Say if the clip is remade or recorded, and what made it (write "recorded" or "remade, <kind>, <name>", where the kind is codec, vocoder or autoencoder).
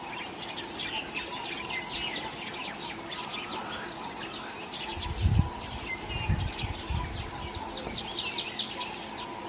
recorded